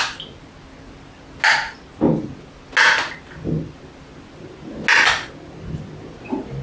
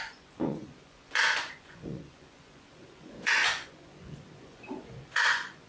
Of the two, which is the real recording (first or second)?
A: first